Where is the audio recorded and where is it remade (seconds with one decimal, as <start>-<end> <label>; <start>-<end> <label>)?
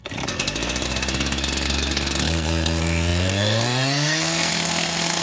0.0-5.2 remade